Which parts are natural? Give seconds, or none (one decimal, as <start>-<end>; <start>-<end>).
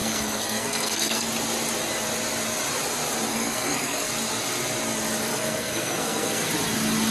1.3-3.3; 4.1-5.3; 6.5-7.1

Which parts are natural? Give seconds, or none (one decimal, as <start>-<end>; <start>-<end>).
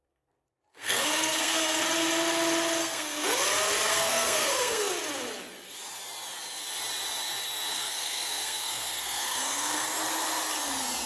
0.0-0.7; 1.8-2.8; 3.4-3.9; 4.9-7.7; 9.9-11.1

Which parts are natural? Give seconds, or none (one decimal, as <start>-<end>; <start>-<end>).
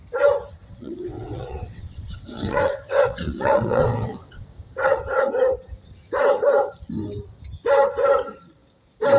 0.0-0.6; 5.3-9.2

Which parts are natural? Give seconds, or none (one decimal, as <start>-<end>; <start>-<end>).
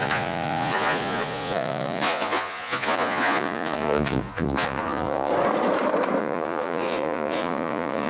5.3-6.2